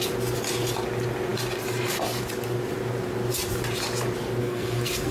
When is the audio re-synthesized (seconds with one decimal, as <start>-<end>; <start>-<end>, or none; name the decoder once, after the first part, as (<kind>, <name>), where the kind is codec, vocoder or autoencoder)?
4.4-5.1 (codec, SNAC)